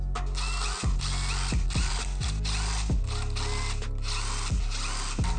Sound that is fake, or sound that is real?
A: real